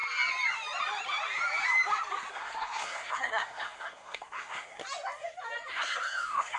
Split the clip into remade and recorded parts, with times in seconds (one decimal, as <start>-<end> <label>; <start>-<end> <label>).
0.0-2.3 recorded; 2.3-4.8 remade; 4.8-5.7 recorded; 5.7-6.6 remade